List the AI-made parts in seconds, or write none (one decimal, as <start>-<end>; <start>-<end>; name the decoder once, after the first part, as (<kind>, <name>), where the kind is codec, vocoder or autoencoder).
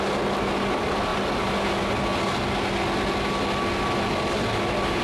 none